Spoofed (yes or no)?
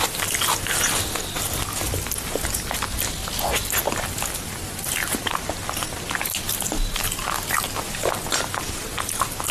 no